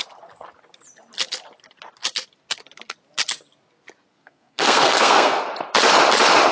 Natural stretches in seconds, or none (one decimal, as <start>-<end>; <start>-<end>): 0.0-4.1; 5.4-6.5